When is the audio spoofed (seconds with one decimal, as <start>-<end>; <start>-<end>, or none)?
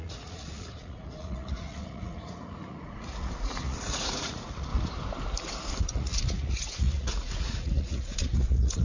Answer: 0.0-4.7; 5.8-8.8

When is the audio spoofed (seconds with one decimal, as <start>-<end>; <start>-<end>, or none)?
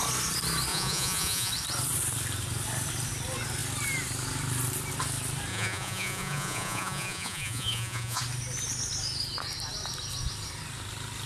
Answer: 0.7-1.5; 5.5-8.2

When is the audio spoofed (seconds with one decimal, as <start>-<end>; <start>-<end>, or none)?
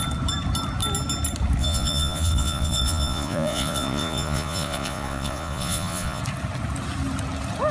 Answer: 1.6-6.2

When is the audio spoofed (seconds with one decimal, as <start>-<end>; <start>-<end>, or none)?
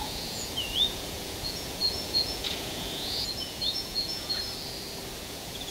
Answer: 0.0-4.4; 5.2-5.7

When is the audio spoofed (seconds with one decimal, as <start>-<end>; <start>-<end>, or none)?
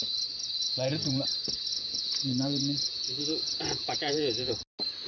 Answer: 0.6-1.2; 1.7-4.5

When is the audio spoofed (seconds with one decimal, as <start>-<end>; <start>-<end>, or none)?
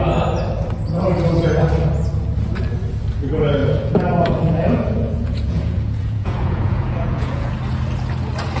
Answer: 3.6-7.5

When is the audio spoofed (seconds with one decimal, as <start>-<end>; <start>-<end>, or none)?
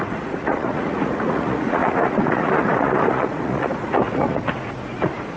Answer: 0.0-5.4